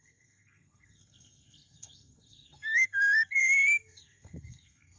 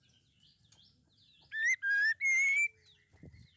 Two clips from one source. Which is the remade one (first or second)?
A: first